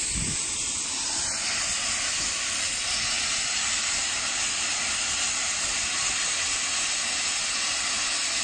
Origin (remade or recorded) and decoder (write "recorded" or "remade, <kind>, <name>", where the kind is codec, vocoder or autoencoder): recorded